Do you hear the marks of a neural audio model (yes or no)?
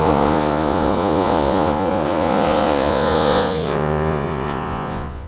yes